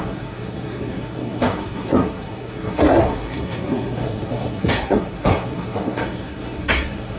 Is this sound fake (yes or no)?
yes